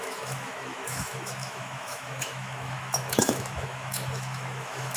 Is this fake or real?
fake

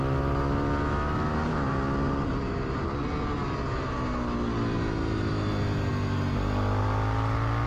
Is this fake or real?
real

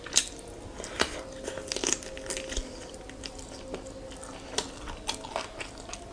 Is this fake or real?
real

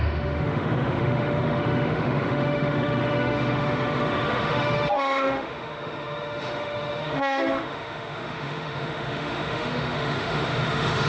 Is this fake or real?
fake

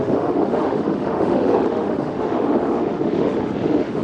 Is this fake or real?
fake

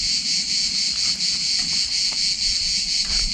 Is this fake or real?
real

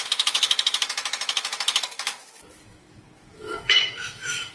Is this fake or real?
fake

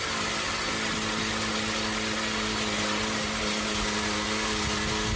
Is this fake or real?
real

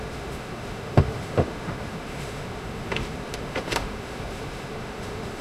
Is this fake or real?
fake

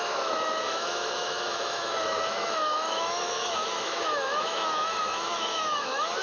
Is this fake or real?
fake